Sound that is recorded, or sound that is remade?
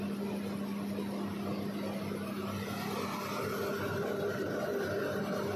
recorded